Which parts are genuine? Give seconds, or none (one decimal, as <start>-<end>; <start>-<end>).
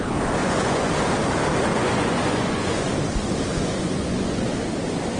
0.0-0.4; 0.9-1.7; 2.9-3.5; 4.5-5.2